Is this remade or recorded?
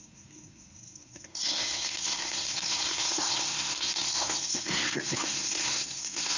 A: remade